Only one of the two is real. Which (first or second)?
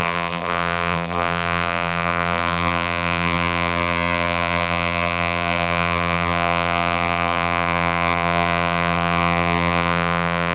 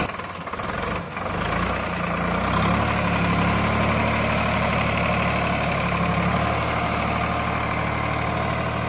second